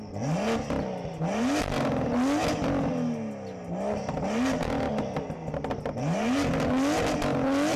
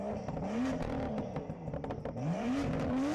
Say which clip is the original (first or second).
first